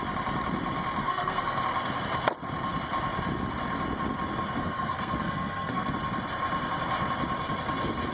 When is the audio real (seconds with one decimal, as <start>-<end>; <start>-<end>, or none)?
0.0-1.0; 1.6-4.6; 5.9-8.1